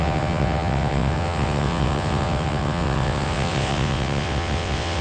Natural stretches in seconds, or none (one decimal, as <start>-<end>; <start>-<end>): none

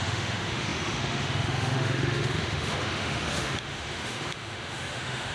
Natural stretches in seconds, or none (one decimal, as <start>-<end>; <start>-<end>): none

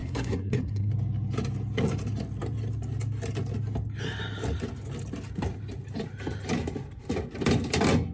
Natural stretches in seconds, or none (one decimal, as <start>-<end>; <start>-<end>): 0.9-8.1

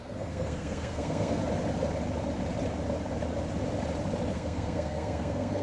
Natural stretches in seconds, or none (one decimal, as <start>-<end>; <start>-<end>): 1.4-4.3

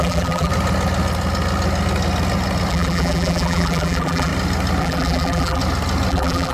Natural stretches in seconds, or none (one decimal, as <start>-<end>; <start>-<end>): 0.5-2.7; 4.3-4.8; 5.6-6.1

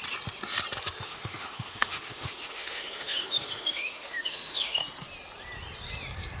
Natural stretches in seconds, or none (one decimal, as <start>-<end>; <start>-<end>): 0.0-1.0; 4.8-6.4

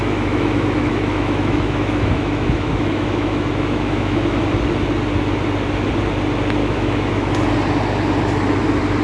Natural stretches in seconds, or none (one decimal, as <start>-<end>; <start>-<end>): 4.4-6.6; 7.3-9.0